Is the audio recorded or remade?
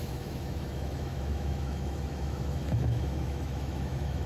remade